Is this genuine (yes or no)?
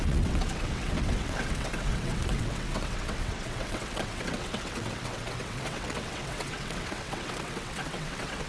no